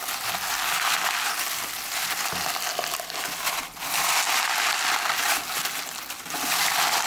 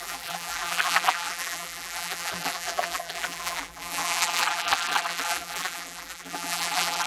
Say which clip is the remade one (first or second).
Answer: second